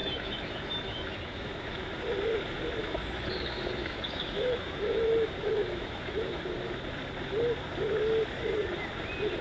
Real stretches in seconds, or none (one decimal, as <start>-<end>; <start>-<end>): 2.0-2.8; 6.4-9.4